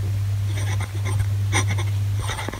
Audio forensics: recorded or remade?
recorded